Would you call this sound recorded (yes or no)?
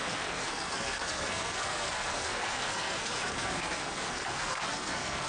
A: no